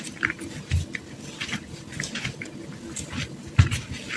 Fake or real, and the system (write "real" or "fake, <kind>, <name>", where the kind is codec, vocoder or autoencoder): real